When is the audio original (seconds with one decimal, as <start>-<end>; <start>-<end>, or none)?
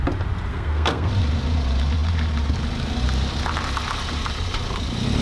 0.0-0.5; 1.1-5.2